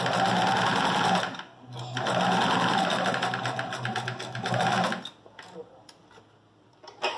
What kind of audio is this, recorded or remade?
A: recorded